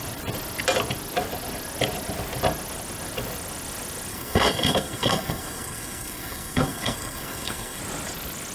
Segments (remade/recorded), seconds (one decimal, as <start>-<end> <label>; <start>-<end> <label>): 0.0-4.1 recorded; 4.1-7.8 remade; 7.8-8.5 recorded